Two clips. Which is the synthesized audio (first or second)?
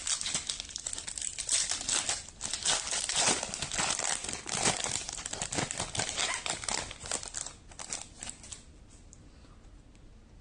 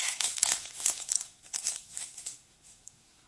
second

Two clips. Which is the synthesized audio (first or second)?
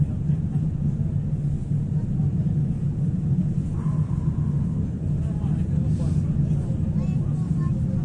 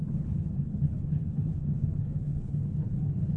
second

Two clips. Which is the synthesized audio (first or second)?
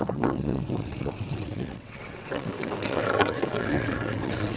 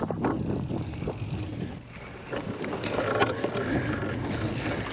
first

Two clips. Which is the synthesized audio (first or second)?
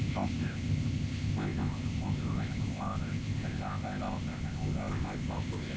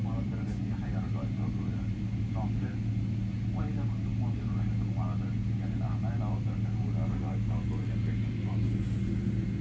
first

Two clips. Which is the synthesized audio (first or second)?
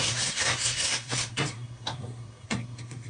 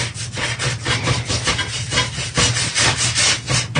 first